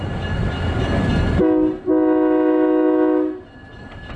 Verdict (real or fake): real